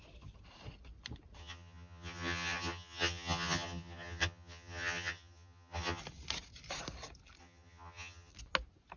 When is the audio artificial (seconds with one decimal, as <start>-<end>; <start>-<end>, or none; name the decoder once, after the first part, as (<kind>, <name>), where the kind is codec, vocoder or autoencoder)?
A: 1.4-6.0 (vocoder, HiFi-GAN); 7.4-8.3